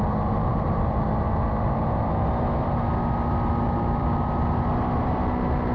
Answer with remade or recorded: recorded